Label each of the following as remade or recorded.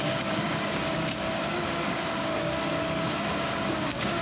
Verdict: remade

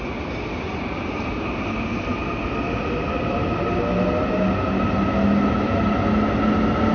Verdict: recorded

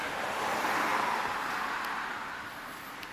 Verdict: recorded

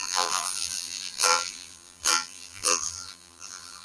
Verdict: remade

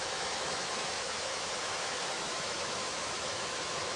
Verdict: remade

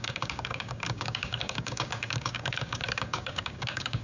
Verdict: remade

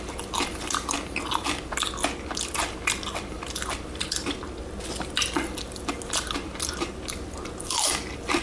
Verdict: recorded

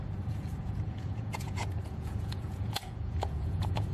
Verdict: remade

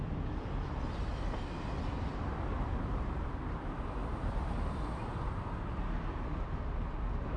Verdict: remade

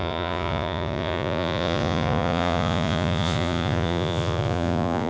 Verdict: remade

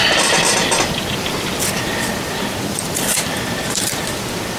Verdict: remade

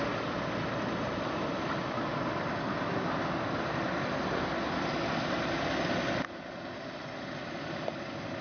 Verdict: recorded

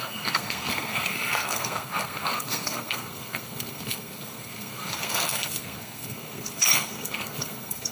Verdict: remade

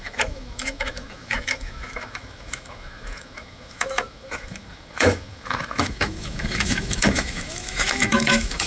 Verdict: remade